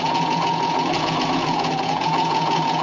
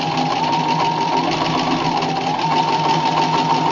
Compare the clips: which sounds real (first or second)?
second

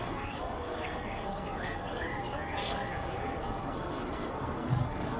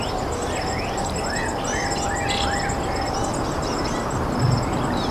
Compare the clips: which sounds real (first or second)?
second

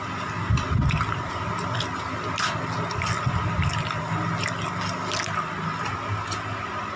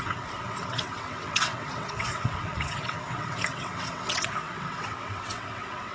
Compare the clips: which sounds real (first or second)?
first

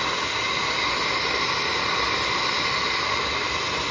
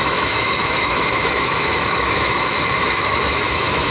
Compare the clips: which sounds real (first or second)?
first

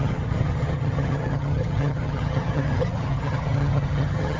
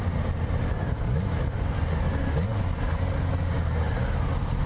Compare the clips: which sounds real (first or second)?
second